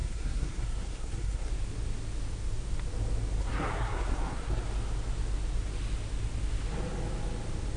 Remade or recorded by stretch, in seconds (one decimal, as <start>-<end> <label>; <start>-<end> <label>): 0.0-1.5 remade; 1.5-3.4 recorded; 3.4-4.6 remade; 4.6-7.8 recorded